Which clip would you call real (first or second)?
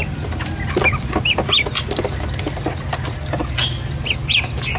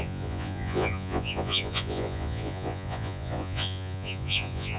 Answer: first